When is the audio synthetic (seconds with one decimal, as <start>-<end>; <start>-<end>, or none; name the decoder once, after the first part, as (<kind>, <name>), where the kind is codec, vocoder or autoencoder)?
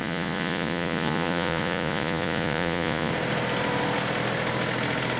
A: 0.0-3.1 (vocoder, Vocos)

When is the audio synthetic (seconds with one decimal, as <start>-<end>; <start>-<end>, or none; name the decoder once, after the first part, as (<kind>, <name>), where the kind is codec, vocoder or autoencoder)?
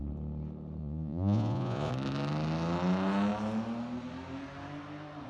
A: 0.8-1.9 (vocoder, Vocos)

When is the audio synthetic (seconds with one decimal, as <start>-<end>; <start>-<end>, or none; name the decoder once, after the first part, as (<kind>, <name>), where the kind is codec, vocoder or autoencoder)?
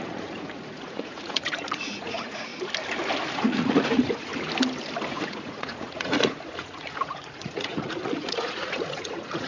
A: 0.0-2.5 (vocoder, Vocos); 3.3-4.3; 5.1-9.5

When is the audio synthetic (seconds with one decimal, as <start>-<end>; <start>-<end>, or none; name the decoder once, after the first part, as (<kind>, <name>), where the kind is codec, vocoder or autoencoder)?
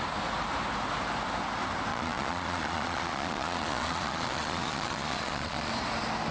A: 1.9-5.7 (vocoder, Vocos)